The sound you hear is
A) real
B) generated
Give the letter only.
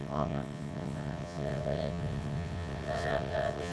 B